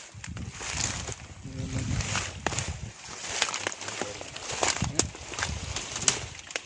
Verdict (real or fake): real